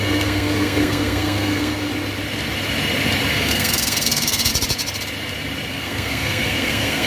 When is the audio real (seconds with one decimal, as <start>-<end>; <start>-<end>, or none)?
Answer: 1.9-3.3; 4.5-5.7